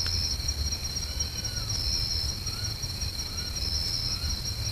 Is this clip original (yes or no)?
yes